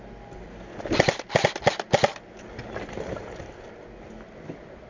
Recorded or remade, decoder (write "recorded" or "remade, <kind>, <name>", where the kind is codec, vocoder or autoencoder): recorded